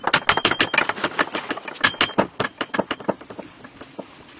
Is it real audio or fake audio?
real